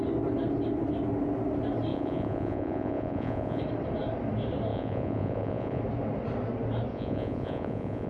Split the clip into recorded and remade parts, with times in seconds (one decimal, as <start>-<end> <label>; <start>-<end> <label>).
0.0-1.9 recorded; 1.9-3.6 remade; 3.6-4.7 recorded; 4.7-5.8 remade; 5.8-6.9 recorded; 6.9-8.1 remade

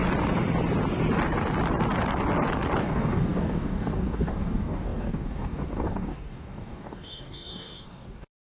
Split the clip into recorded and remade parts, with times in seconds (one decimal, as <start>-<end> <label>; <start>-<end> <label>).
0.0-2.8 recorded; 2.8-8.4 remade

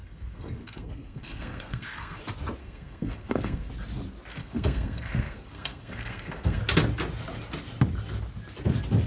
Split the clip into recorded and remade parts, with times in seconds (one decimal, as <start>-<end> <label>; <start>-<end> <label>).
0.0-2.2 remade; 2.2-2.6 recorded; 2.6-3.7 remade; 3.7-4.3 recorded; 4.3-6.6 remade; 6.6-9.1 recorded

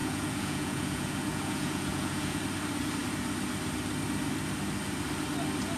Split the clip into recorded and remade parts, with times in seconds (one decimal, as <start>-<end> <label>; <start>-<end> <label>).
0.0-2.4 remade; 2.4-5.8 recorded

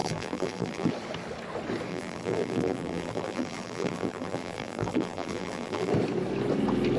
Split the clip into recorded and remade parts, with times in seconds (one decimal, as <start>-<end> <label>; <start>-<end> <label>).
0.0-0.9 remade; 0.9-1.9 recorded; 1.9-5.9 remade; 5.9-7.0 recorded

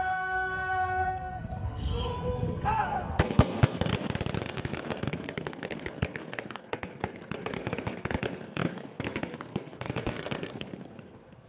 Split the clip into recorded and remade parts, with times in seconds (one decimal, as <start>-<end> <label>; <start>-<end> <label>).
0.0-3.9 remade; 3.9-4.4 recorded; 4.4-11.5 remade